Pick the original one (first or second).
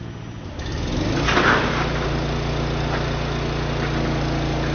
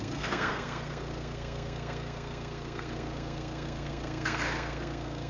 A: first